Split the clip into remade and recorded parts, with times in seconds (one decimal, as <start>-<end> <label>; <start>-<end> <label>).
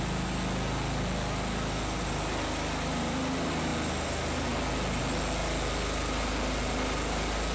0.0-7.5 recorded